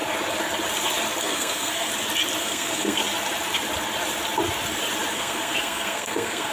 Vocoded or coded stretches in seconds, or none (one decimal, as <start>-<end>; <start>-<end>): 1.2-1.9; 2.4-3.0; 5.1-6.5